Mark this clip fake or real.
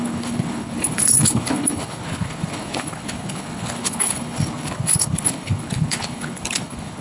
fake